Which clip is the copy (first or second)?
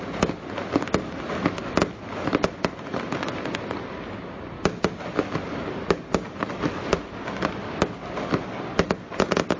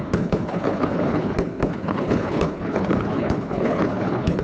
second